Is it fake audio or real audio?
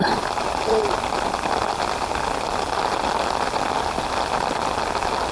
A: real